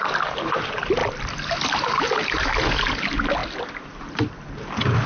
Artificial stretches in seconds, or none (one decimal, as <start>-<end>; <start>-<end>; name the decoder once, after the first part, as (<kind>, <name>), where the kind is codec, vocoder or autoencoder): none

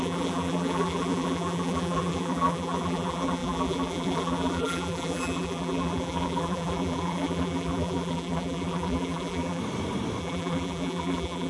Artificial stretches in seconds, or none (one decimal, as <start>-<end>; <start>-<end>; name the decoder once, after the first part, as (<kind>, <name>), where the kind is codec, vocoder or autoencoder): 0.0-9.6 (vocoder, BigVGAN v2); 10.2-11.5

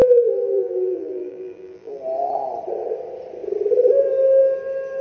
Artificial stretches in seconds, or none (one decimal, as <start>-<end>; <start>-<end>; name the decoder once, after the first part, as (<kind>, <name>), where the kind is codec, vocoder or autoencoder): 0.0-2.0 (vocoder, BigVGAN v2)

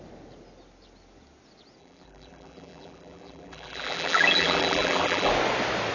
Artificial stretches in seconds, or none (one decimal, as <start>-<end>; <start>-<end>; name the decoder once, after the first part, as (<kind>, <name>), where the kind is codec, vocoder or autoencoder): 1.8-5.3 (vocoder, BigVGAN v2)

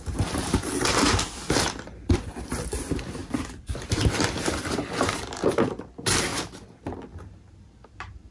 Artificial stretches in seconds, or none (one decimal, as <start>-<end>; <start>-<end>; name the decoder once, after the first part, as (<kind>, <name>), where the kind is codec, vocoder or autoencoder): 0.0-6.3 (vocoder, BigVGAN v2); 6.8-8.3

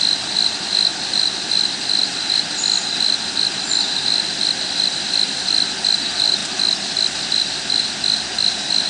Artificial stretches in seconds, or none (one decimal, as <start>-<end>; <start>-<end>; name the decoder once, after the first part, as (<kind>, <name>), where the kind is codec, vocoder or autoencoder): none